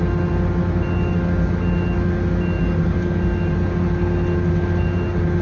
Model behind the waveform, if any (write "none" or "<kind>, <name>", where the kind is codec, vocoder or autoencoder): none